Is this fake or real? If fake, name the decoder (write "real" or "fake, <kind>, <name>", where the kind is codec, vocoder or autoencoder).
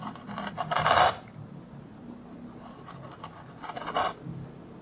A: real